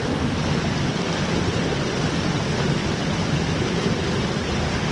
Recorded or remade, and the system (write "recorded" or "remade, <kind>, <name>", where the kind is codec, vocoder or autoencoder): remade, vocoder, BigVGAN v2